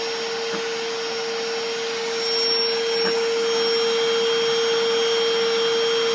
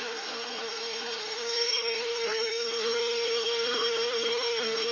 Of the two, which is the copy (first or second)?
second